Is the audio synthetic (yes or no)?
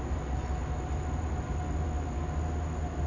no